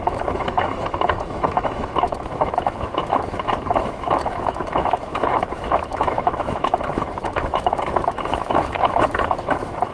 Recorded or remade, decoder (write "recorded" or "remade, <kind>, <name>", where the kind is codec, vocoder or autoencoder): remade, autoencoder, DAC-VAE